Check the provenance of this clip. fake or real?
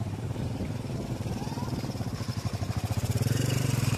fake